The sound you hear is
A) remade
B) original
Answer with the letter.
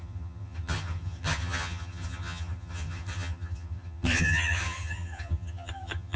A